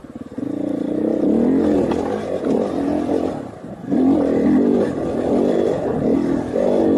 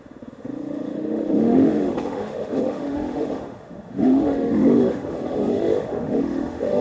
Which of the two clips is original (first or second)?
first